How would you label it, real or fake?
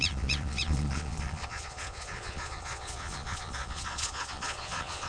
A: fake